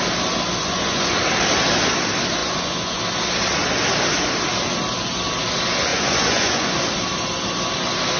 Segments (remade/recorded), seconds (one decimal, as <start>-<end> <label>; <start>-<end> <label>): 0.0-0.6 recorded; 0.6-1.2 remade; 1.2-2.4 recorded; 2.4-3.0 remade; 3.0-5.9 recorded; 5.9-6.8 remade; 6.8-8.2 recorded